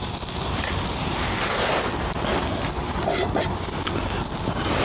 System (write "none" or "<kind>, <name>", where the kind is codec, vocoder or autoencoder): none